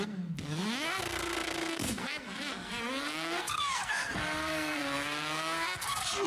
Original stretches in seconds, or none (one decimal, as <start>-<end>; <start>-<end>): none